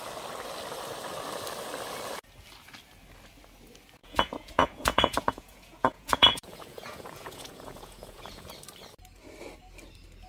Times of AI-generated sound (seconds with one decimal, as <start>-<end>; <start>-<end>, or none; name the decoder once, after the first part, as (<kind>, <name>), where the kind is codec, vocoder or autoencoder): 4.0-8.5 (vocoder, Vocos)